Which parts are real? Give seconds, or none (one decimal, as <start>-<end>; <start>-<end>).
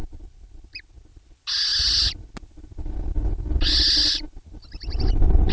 0.0-5.5